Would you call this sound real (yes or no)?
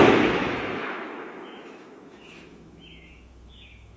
no